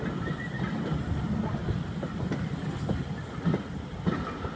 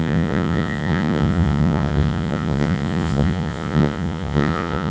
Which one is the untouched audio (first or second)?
first